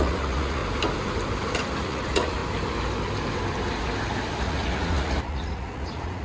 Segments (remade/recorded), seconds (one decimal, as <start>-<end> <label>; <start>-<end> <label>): 0.0-0.6 remade; 0.6-1.8 recorded; 1.8-2.4 remade; 2.4-4.4 recorded; 4.4-6.2 remade